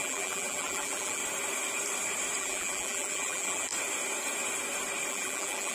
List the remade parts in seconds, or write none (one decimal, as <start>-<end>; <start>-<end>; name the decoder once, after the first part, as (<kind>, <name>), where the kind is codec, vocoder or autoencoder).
0.0-1.2 (vocoder, BigVGAN v2); 2.4-3.7; 5.1-5.7

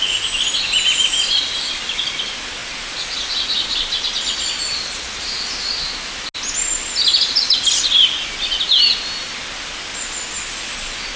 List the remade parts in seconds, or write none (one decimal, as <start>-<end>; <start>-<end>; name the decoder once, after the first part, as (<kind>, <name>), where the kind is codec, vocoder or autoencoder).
none

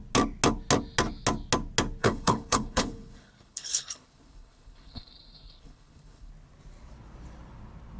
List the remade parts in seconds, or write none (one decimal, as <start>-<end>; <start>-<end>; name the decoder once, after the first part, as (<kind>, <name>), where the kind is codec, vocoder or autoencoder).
2.0-6.3 (codec, HILCodec)

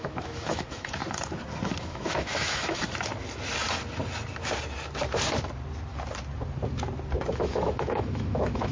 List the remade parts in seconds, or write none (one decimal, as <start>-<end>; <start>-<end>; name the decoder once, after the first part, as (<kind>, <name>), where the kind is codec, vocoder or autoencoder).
0.0-1.0 (autoencoder, DAC-VAE); 1.8-2.8; 7.3-8.7

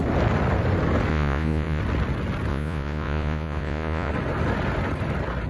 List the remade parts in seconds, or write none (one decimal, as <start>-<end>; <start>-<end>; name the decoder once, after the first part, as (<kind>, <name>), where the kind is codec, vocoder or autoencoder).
1.1-1.8 (vocoder, Vocos); 2.5-4.1

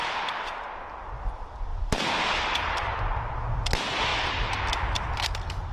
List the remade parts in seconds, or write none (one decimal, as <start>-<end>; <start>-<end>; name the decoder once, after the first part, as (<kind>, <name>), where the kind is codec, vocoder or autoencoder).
none

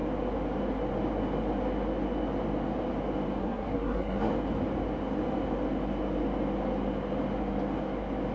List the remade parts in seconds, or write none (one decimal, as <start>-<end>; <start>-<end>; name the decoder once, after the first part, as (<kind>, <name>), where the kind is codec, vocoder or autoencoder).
3.4-4.3 (codec, SNAC)

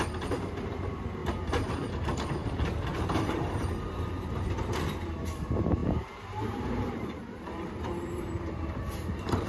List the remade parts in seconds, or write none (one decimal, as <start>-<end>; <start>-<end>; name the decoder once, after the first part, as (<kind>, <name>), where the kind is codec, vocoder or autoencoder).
0.0-1.2 (vocoder, BigVGAN v2); 1.7-9.5